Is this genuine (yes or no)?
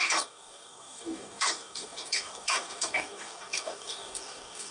no